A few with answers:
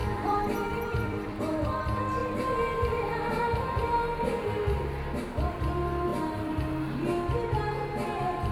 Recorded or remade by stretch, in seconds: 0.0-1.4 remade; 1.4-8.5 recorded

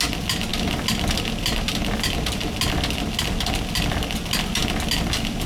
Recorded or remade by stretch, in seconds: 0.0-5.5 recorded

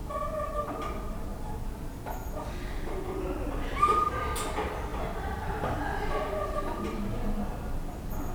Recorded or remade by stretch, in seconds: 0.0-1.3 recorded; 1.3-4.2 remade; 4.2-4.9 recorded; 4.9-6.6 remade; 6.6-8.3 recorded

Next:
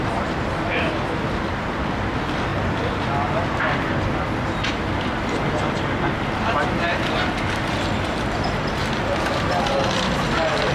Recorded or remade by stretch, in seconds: 0.0-8.8 recorded; 8.8-9.8 remade; 9.8-10.7 recorded

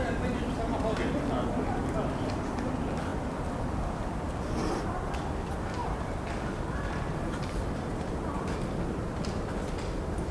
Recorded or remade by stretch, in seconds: 0.0-5.8 recorded; 5.8-8.1 remade; 8.1-10.3 recorded